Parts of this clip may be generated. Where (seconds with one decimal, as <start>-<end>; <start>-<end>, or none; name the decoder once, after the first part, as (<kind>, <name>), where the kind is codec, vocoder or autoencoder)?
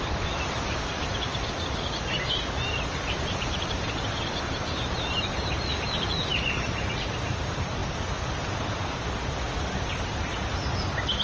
2.9-5.6 (vocoder, BigVGAN v2); 6.3-6.9